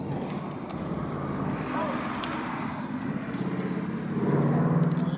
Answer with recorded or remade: recorded